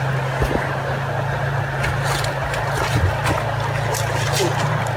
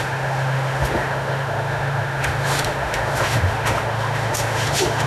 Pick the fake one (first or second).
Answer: second